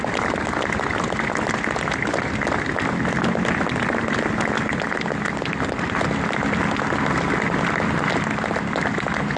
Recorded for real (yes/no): yes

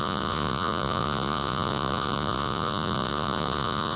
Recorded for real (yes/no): no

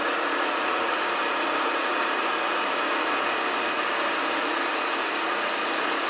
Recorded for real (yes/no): no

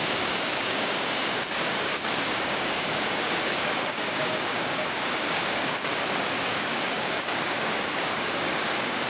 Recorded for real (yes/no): no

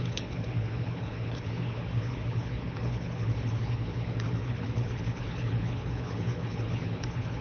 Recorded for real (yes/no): no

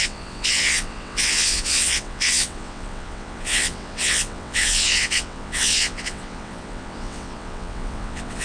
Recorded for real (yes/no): no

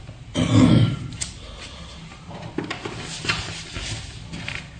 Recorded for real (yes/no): yes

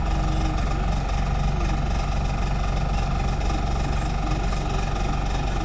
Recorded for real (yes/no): yes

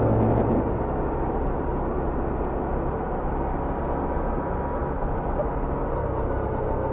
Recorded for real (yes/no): yes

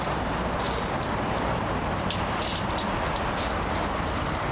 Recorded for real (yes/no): no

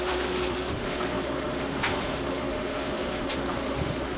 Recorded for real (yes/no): no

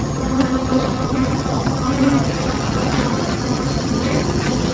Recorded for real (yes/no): no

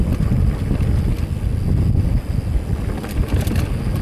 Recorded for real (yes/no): yes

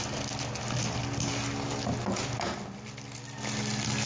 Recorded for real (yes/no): yes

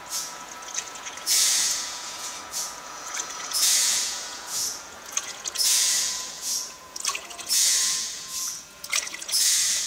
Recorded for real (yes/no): no